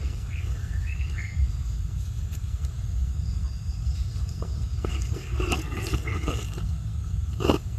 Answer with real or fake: fake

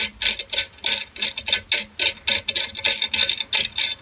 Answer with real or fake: real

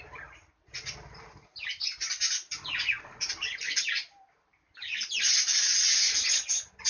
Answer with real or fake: real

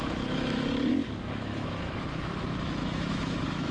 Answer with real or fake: fake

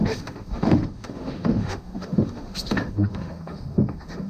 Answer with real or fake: fake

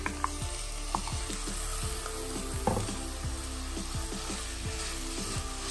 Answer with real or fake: real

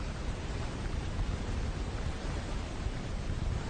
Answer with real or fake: fake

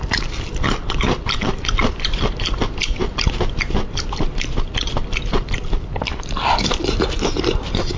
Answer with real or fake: fake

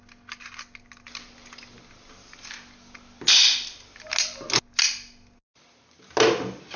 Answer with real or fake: real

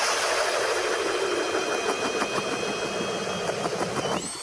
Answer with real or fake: real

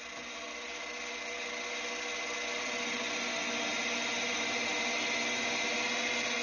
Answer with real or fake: real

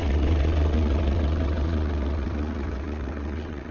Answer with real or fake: fake